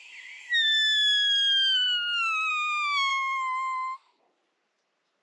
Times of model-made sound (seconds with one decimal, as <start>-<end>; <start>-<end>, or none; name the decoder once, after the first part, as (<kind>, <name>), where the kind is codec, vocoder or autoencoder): 0.4-2.5 (autoencoder, DAC-VAE); 3.1-4.0

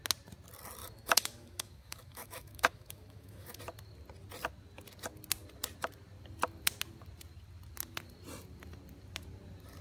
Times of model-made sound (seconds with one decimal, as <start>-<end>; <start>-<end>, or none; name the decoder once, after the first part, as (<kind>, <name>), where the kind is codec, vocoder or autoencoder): 0.8-3.6 (autoencoder, DAC-VAE)

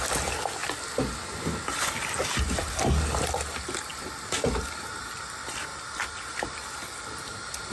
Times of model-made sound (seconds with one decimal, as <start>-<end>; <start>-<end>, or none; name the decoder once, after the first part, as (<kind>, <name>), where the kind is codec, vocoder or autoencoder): none

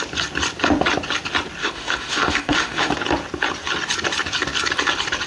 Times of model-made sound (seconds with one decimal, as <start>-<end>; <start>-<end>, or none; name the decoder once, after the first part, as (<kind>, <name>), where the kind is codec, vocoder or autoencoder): 1.6-2.9 (autoencoder, DAC-VAE)

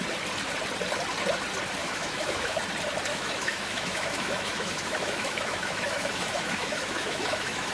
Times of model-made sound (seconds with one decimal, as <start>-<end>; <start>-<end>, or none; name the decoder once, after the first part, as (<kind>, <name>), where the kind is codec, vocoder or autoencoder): 1.8-2.6 (autoencoder, DAC-VAE); 3.1-7.7